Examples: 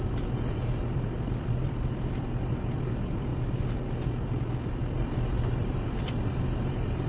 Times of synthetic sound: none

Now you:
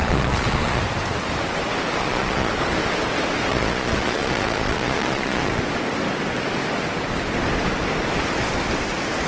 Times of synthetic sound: 0.0-0.8 (vocoder, Vocos); 2.0-2.5; 3.5-5.6

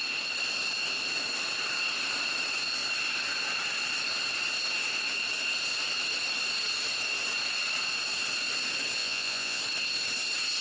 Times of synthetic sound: 9.0-9.6 (vocoder, Vocos)

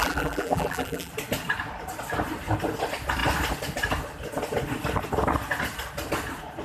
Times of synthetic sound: 0.0-1.1 (vocoder, BigVGAN v2)